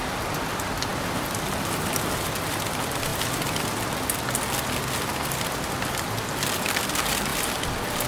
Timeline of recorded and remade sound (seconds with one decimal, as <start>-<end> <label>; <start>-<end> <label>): 0.0-8.1 recorded